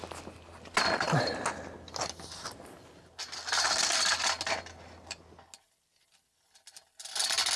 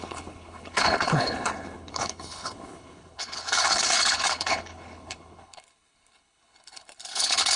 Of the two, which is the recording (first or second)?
first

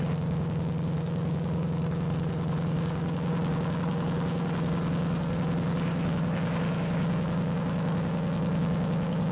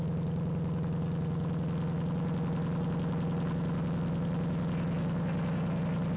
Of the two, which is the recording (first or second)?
second